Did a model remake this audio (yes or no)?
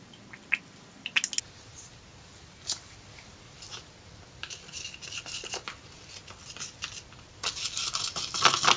no